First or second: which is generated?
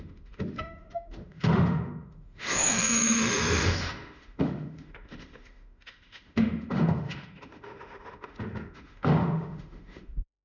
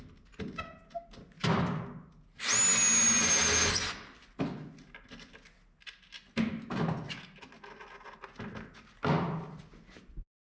first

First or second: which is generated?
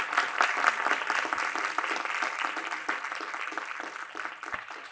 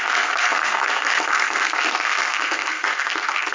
second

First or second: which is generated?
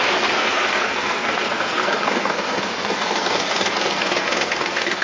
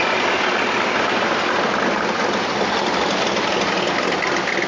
first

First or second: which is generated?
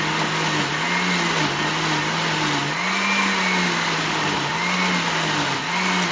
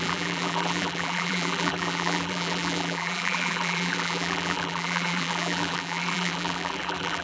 second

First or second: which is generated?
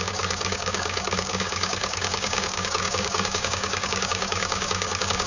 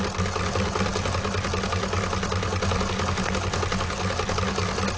first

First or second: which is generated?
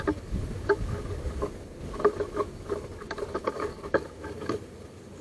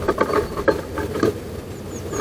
first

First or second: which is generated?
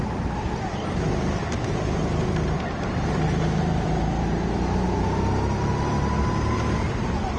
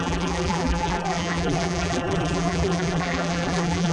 second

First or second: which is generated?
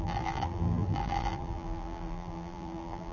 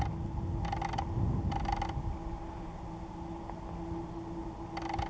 first